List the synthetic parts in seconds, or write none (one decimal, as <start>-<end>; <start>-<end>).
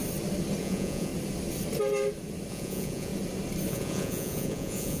0.6-1.1; 2.5-3.1; 3.7-5.0